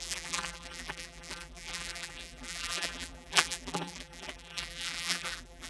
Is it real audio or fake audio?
fake